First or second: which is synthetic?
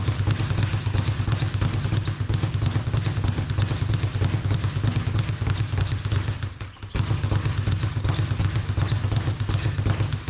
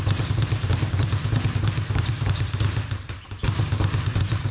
second